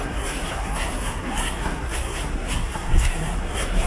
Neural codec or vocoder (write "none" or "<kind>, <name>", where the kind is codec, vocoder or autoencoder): codec, SNAC